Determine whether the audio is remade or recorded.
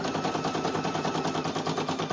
recorded